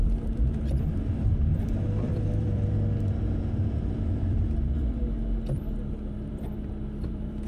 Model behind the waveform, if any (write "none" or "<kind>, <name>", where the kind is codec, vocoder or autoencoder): vocoder, BigVGAN v2